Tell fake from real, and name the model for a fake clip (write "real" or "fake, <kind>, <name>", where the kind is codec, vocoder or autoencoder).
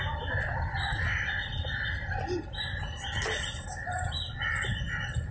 real